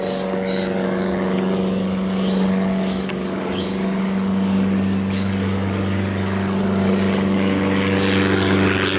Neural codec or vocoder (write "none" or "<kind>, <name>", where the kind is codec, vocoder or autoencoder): codec, DAC